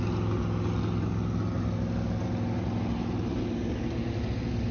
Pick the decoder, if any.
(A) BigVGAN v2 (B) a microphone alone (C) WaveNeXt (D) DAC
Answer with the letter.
B